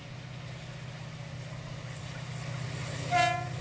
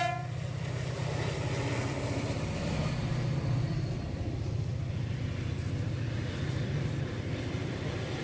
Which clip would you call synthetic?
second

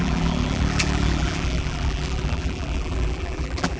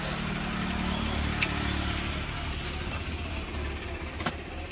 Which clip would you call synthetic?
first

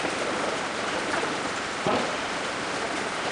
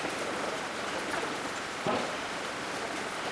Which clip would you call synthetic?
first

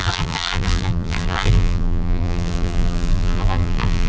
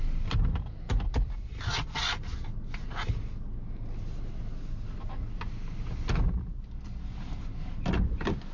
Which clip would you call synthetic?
first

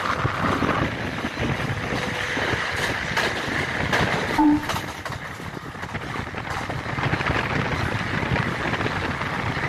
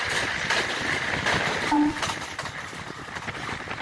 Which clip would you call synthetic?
second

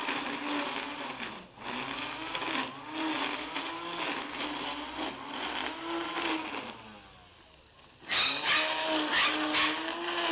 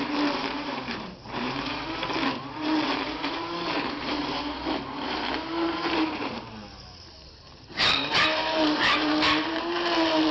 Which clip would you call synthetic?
second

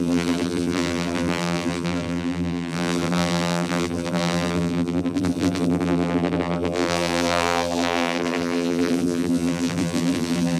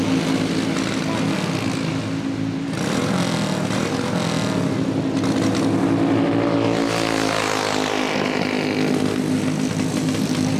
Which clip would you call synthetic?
first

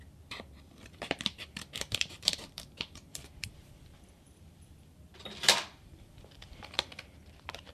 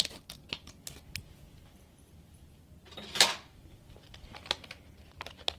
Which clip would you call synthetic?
first